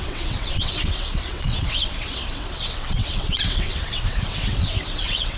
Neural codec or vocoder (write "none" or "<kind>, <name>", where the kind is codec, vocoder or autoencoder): vocoder, WaveNeXt